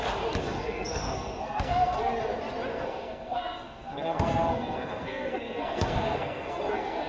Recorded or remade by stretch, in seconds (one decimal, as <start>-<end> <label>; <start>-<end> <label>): 0.0-0.4 recorded; 0.4-2.1 remade; 2.1-2.7 recorded; 2.7-7.1 remade